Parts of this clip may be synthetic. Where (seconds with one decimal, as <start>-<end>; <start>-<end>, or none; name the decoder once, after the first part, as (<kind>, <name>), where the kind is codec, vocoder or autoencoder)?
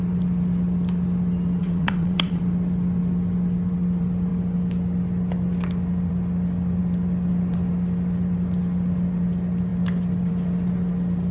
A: 1.6-2.4 (vocoder, WaveNeXt)